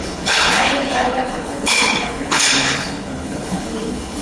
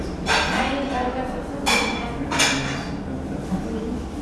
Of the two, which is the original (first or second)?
second